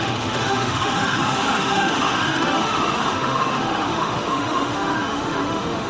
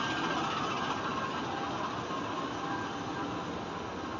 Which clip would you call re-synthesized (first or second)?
first